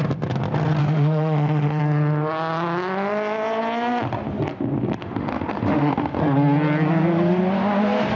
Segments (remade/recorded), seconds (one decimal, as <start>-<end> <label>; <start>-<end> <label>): 0.0-0.8 recorded; 0.8-1.8 remade; 1.8-5.0 recorded; 5.0-6.2 remade; 6.2-8.2 recorded